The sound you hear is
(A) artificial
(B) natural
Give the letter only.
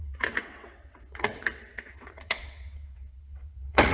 A